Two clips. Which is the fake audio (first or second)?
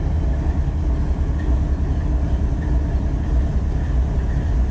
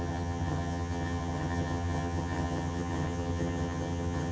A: second